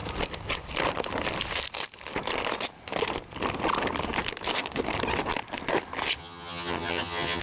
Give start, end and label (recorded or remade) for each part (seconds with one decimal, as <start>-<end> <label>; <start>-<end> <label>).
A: 0.0-6.2 recorded; 6.2-7.4 remade